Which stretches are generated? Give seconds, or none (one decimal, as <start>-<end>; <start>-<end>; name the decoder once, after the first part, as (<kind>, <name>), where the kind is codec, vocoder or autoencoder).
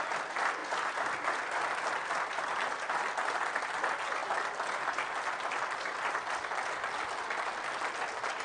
none